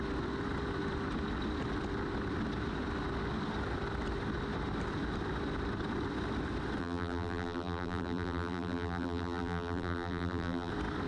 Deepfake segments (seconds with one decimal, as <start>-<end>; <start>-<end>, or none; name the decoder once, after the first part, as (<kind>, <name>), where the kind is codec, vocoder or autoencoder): 6.8-10.7 (vocoder, BigVGAN v2)